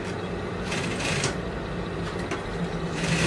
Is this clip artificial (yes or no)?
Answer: no